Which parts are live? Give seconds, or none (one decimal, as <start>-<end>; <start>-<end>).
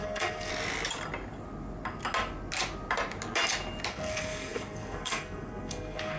0.5-3.9